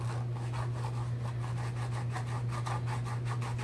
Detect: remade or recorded recorded